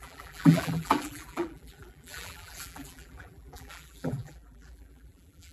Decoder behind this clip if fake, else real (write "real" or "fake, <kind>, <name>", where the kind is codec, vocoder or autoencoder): fake, vocoder, BigVGAN v2